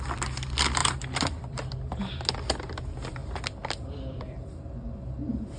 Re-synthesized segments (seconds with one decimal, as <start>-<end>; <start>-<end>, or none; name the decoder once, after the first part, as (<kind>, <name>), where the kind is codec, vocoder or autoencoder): 0.8-2.0 (vocoder, BigVGAN v2); 3.2-4.6